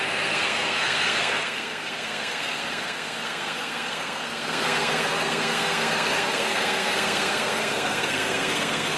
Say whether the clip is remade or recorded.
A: remade